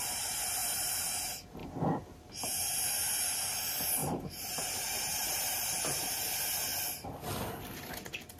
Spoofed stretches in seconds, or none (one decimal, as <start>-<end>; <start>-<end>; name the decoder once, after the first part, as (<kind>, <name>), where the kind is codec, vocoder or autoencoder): 0.6-1.1 (vocoder, BigVGAN v2); 1.6-2.3; 4.0-6.3